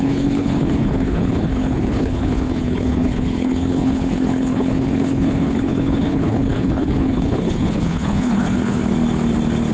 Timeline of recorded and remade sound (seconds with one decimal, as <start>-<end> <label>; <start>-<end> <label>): 0.0-8.8 remade; 8.8-9.7 recorded